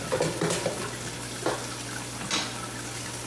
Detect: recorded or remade recorded